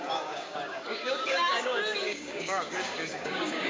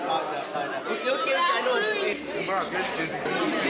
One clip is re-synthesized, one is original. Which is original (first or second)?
second